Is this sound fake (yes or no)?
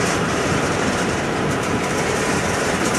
yes